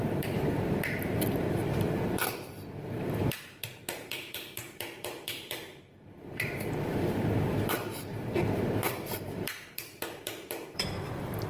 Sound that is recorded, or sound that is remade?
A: remade